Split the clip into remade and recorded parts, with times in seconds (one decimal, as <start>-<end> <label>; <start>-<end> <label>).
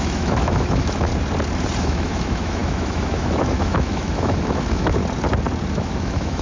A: 0.0-1.1 remade; 1.1-1.8 recorded; 1.8-5.0 remade; 5.0-5.7 recorded; 5.7-6.4 remade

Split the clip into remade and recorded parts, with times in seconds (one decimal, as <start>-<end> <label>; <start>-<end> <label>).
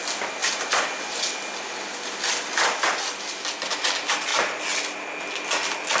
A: 0.0-6.0 recorded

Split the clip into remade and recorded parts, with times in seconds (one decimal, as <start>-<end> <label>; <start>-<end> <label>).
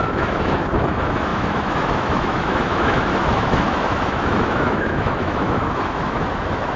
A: 0.0-6.8 remade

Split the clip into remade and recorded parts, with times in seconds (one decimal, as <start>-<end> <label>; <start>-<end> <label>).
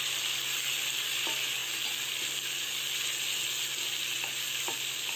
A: 0.0-5.2 recorded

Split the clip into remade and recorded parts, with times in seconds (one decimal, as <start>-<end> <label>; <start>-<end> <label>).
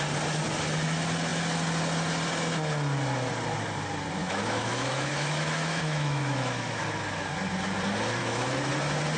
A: 0.0-4.2 recorded; 4.2-6.8 remade; 6.8-8.2 recorded; 8.2-8.7 remade; 8.7-9.2 recorded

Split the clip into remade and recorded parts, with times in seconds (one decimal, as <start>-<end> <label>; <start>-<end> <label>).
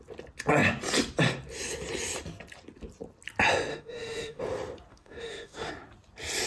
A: 0.0-3.7 recorded; 3.7-4.4 remade; 4.4-4.9 recorded; 4.9-5.7 remade; 5.7-6.5 recorded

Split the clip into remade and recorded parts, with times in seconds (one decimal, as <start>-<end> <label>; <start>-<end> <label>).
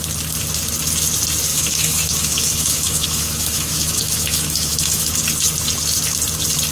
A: 0.0-1.5 recorded; 1.5-5.1 remade; 5.1-6.7 recorded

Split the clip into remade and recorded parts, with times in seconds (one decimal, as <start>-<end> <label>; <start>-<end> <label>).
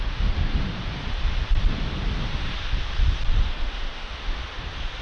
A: 0.0-0.5 remade; 0.5-3.3 recorded; 3.3-4.4 remade; 4.4-5.0 recorded